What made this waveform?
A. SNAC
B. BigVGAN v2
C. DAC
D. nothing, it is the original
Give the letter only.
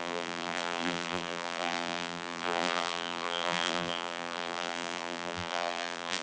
B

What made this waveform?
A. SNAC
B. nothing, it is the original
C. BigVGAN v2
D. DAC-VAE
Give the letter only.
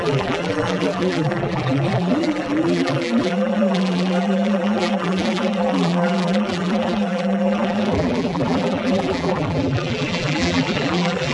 C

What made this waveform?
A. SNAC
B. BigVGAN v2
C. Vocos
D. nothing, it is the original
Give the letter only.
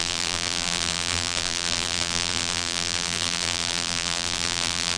B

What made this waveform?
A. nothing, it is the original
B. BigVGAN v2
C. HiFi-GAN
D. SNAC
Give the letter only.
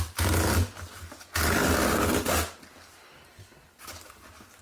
A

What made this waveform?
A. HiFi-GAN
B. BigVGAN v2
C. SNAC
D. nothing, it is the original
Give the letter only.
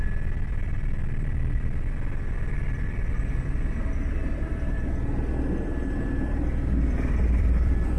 B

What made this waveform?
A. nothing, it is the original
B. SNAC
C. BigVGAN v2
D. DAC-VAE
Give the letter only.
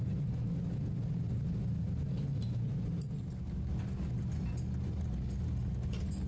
A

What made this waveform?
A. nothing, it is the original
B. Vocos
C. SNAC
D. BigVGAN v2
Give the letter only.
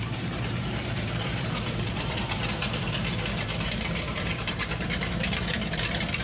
D